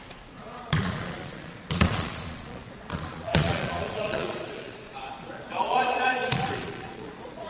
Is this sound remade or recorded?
remade